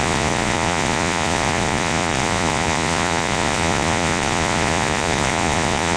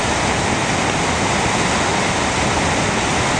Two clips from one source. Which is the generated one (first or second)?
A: first